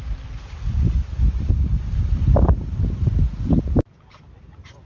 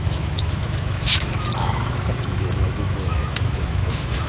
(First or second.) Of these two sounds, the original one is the first